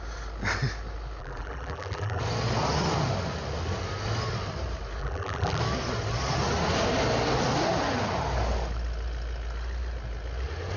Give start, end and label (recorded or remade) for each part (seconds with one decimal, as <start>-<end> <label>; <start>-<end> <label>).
0.0-1.2 recorded; 1.2-2.2 remade; 2.2-5.0 recorded; 5.0-5.6 remade; 5.6-10.8 recorded